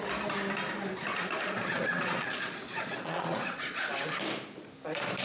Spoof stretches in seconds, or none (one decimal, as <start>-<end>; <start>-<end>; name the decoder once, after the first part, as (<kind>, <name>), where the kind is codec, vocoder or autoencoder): 1.1-4.2 (vocoder, Vocos)